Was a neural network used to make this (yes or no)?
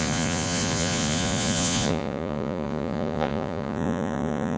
yes